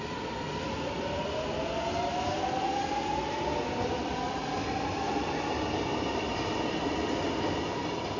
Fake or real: real